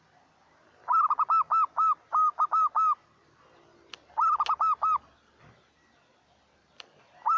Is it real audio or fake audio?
real